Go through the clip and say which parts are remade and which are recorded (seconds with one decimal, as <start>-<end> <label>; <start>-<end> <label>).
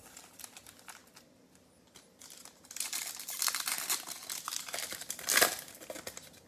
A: 0.0-6.5 recorded